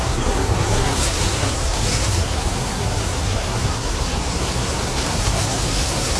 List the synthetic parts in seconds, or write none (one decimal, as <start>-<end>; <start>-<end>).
0.0-6.2